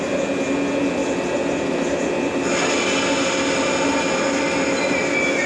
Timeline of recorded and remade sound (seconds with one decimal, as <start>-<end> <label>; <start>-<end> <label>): 0.0-5.5 recorded